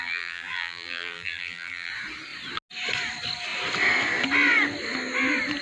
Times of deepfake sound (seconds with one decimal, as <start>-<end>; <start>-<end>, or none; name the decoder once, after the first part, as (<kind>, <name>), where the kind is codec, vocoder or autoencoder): 0.0-1.9 (vocoder, BigVGAN v2)